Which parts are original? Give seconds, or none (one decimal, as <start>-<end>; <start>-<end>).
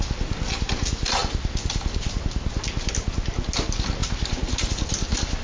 0.0-1.2; 2.2-4.0; 4.7-5.4